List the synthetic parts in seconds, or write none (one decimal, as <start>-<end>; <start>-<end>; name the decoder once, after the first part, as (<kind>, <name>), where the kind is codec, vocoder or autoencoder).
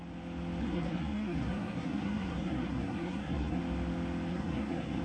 0.6-3.6 (codec, SNAC); 4.3-5.0